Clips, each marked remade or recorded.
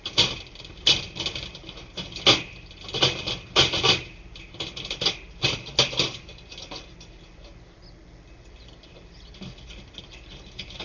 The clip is recorded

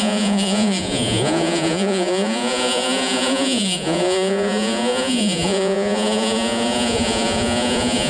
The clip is remade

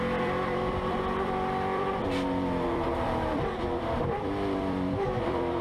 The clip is remade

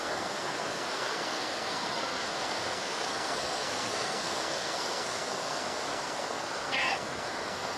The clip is remade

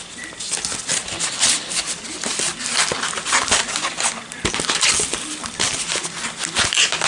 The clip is recorded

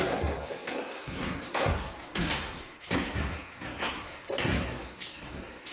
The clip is remade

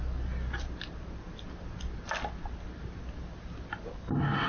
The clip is recorded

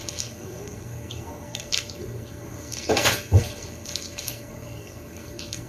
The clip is remade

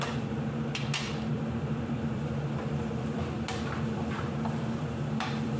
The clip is remade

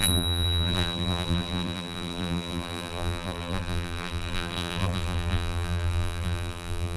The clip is remade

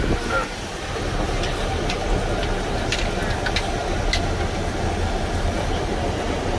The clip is recorded